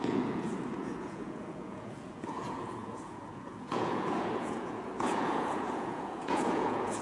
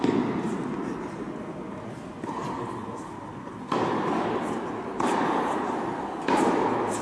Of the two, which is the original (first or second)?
second